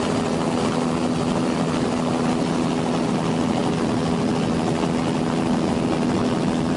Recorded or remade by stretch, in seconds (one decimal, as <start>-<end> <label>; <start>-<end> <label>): 0.0-6.8 recorded